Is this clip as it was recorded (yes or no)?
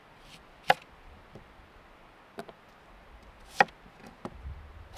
yes